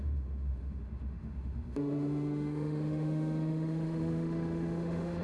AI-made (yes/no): yes